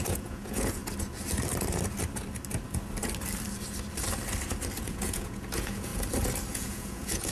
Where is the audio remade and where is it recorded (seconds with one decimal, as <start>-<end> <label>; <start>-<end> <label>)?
0.0-0.8 remade; 0.8-4.8 recorded; 4.8-5.9 remade; 5.9-6.5 recorded; 6.5-7.3 remade